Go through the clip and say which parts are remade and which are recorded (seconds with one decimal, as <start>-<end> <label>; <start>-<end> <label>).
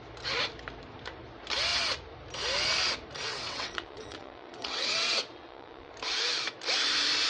0.0-3.3 recorded; 3.3-5.9 remade; 5.9-7.3 recorded